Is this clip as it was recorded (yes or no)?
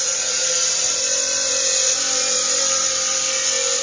yes